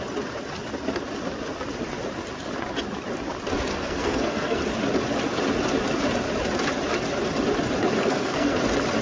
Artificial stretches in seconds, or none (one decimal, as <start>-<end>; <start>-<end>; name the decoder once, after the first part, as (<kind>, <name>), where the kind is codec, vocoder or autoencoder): 3.7-4.6 (codec, SNAC); 8.0-8.6